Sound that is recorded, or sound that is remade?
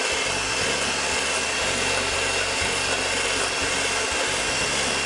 recorded